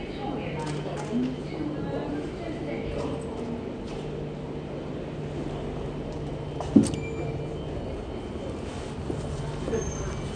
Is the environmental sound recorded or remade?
recorded